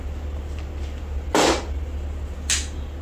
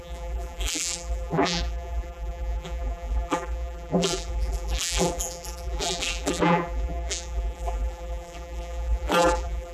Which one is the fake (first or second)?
second